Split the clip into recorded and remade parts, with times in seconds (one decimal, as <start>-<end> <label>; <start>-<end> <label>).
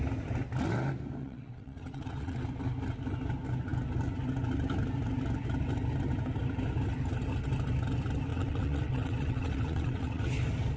0.0-1.2 recorded; 1.2-2.4 remade; 2.4-8.3 recorded; 8.3-10.2 remade; 10.2-10.8 recorded